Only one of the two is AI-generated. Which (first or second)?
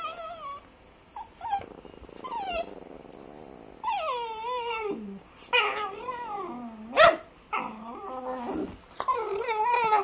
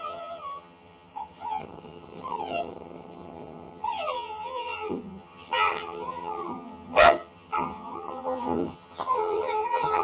second